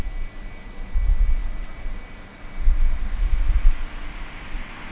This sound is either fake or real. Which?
real